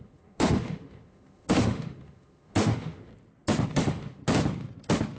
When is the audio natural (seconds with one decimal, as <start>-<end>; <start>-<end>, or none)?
3.1-3.7; 4.2-5.2